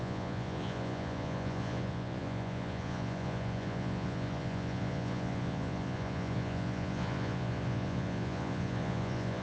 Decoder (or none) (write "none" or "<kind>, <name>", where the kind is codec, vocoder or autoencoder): vocoder, Vocos